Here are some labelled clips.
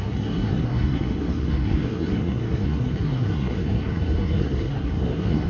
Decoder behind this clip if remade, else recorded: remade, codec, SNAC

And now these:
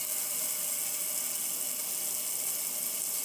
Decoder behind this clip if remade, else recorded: recorded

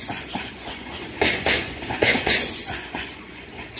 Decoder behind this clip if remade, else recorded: remade, vocoder, Vocos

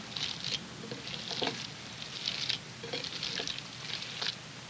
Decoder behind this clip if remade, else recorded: recorded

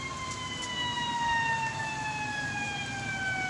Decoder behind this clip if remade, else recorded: recorded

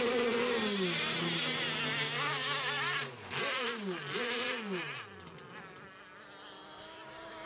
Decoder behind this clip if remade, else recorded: recorded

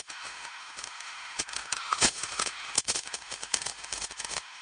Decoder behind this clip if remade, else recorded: remade, autoencoder, DAC-VAE